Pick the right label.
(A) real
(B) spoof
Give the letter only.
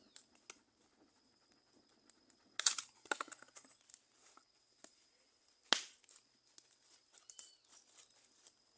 A